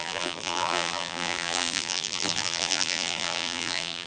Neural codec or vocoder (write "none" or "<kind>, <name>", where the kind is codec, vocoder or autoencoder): vocoder, BigVGAN v2